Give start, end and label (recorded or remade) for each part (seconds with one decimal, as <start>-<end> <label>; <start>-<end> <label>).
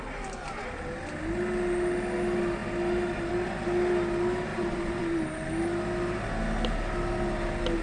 0.0-4.5 recorded; 4.5-5.5 remade; 5.5-7.8 recorded